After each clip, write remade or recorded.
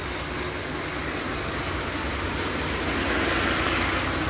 recorded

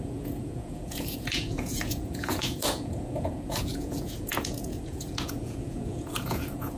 remade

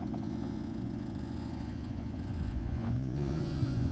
remade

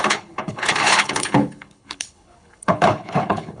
remade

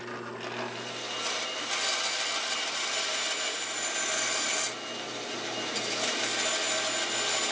recorded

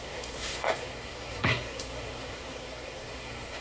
remade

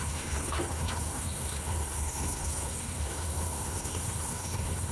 remade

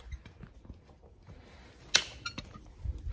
recorded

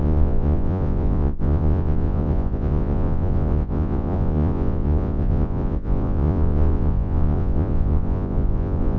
remade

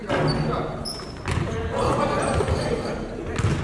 recorded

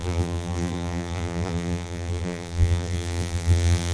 remade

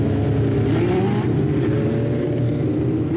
recorded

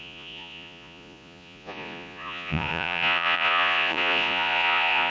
remade